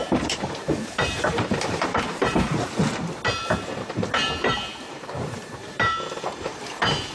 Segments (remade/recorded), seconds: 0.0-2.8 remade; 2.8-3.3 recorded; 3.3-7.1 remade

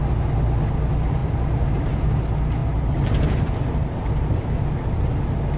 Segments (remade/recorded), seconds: 0.0-1.2 recorded; 1.2-1.8 remade; 1.8-2.6 recorded; 2.6-4.3 remade; 4.3-5.6 recorded

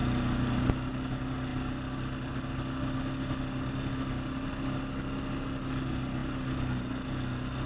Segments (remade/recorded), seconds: 0.0-7.7 recorded

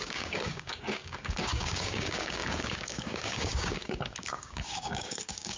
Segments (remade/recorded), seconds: 0.0-5.6 remade

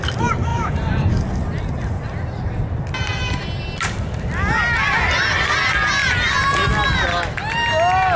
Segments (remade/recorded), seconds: 0.0-0.5 recorded; 0.5-1.1 remade; 1.1-8.2 recorded

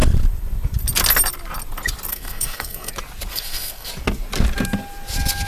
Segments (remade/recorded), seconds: 0.0-2.1 recorded; 2.1-2.9 remade; 2.9-3.3 recorded; 3.3-3.9 remade; 3.9-5.5 recorded